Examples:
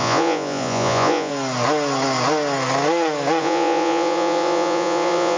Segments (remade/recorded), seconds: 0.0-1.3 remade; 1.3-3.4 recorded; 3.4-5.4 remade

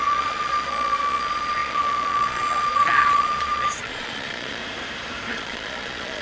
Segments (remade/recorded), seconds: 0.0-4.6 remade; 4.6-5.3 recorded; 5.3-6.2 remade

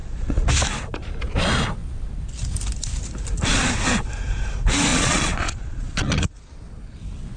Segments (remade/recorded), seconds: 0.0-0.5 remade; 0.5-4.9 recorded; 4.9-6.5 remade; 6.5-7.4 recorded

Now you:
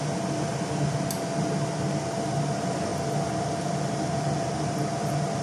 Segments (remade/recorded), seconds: 0.0-5.4 recorded

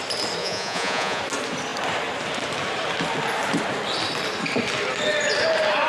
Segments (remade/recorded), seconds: 0.0-0.4 recorded; 0.4-1.2 remade; 1.2-5.9 recorded

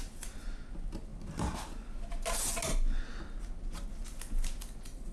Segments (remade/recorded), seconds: 0.0-5.1 recorded

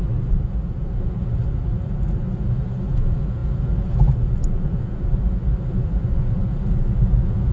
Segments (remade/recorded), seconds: 0.0-7.5 recorded